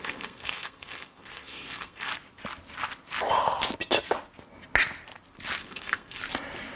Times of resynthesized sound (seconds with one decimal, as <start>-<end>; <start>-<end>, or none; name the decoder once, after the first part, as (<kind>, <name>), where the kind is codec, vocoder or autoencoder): 0.0-2.1 (codec, SNAC); 5.6-6.2